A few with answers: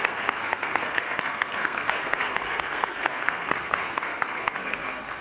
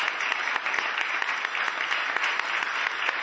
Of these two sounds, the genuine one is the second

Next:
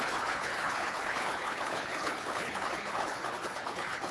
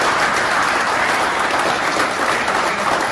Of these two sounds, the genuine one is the second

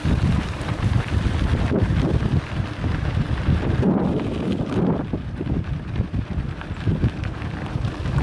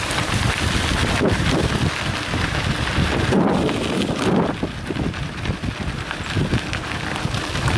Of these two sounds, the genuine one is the second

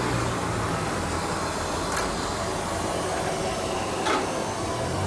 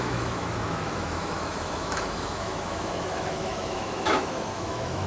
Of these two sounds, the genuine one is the first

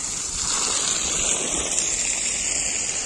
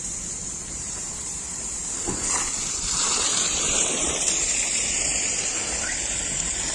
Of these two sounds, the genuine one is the first